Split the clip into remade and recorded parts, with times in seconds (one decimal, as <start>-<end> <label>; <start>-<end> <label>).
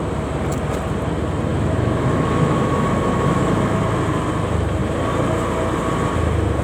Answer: 0.0-1.5 recorded; 1.5-3.8 remade; 3.8-6.6 recorded